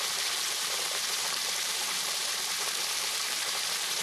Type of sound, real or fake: fake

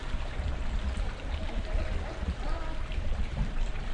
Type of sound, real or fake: fake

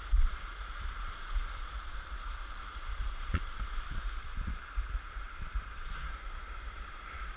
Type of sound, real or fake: fake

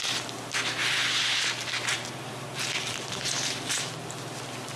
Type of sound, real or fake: real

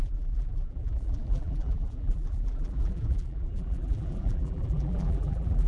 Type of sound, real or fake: fake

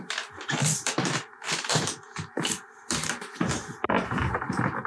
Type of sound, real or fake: fake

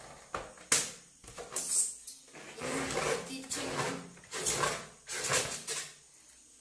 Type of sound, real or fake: real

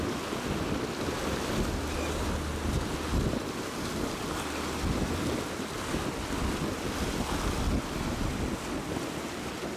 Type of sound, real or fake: real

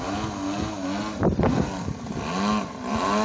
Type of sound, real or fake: real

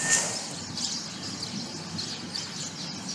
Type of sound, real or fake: real